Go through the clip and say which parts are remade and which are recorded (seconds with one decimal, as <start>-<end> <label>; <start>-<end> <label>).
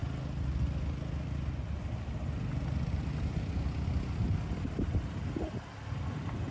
0.0-6.5 recorded